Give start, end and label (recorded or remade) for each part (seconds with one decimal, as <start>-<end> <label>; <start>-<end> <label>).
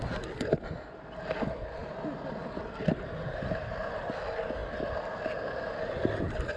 0.0-6.6 recorded